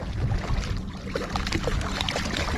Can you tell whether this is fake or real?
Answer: real